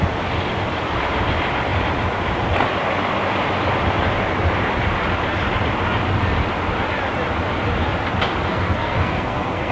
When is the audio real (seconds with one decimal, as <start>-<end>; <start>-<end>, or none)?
0.0-8.5